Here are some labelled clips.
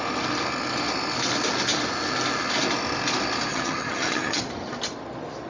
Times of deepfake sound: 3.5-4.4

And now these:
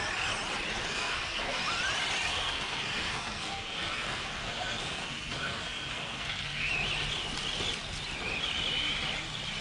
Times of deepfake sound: 0.8-1.6; 2.3-6.7

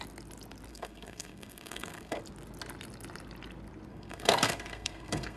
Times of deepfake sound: 0.7-2.2; 3.9-5.4

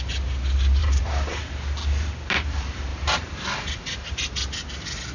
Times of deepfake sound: 0.8-1.5; 2.9-4.1

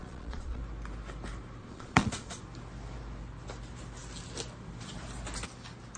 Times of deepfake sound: 0.0-0.6; 1.6-2.4

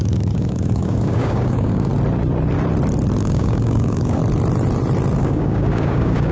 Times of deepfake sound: 0.0-1.9; 3.2-4.2; 5.2-6.3

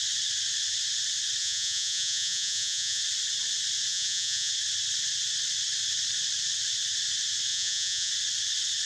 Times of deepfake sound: 1.4-3.0; 3.9-4.5; 7.5-8.1

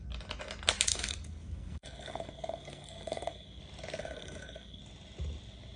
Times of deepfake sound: 0.9-3.6; 4.0-4.8